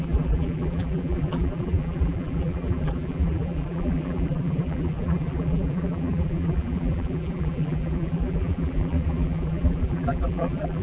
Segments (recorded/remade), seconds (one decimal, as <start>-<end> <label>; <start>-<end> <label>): 0.0-10.8 remade